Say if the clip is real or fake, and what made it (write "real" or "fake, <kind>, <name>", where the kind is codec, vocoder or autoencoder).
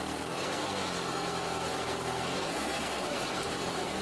fake, codec, SNAC